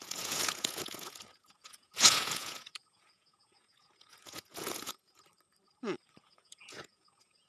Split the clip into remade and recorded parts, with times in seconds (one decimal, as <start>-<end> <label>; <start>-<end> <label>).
0.0-5.3 remade; 5.3-6.2 recorded; 6.2-7.5 remade